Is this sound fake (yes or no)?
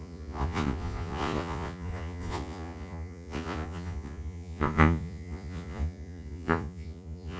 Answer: yes